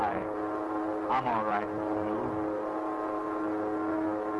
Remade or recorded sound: recorded